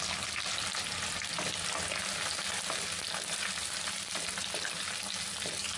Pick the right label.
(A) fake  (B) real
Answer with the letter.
B